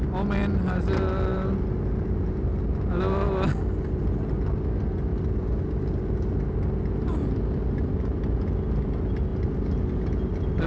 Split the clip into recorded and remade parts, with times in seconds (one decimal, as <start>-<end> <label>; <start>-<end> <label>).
0.0-10.7 recorded